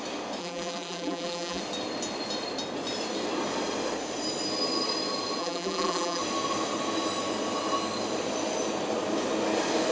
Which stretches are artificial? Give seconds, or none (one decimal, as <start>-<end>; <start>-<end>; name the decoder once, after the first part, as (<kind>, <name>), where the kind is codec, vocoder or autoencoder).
0.4-1.6 (vocoder, BigVGAN v2); 5.4-6.2